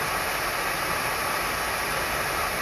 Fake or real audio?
real